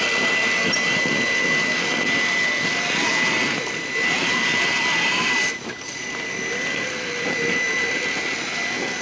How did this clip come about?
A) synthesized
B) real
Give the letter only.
B